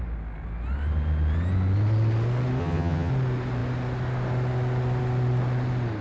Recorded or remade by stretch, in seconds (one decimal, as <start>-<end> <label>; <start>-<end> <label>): 0.0-2.6 recorded; 2.6-3.1 remade; 3.1-6.0 recorded